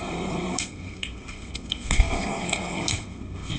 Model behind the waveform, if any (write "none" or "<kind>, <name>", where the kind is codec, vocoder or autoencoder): codec, SNAC